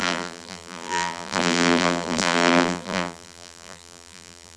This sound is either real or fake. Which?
fake